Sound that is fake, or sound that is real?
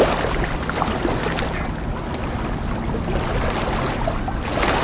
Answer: real